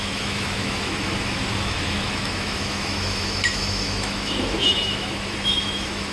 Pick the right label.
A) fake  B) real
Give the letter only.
A